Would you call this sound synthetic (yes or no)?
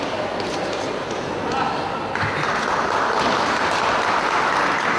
no